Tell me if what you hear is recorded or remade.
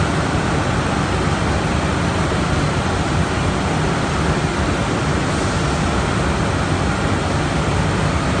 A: recorded